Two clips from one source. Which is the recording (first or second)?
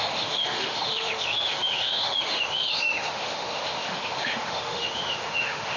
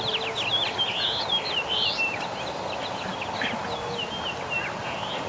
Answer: second